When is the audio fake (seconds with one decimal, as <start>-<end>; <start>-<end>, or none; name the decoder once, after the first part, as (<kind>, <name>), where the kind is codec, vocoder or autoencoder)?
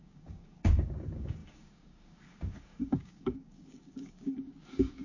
0.0-5.0 (codec, DAC)